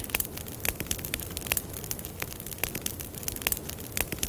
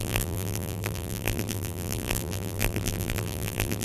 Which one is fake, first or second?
second